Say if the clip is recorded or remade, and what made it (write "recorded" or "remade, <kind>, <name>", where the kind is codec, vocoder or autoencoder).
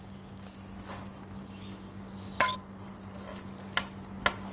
recorded